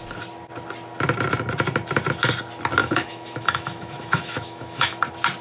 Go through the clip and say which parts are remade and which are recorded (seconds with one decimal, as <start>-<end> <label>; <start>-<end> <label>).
0.0-2.8 recorded; 2.8-5.0 remade; 5.0-5.4 recorded